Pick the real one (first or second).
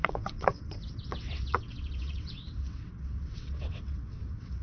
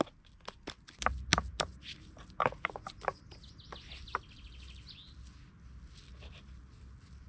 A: second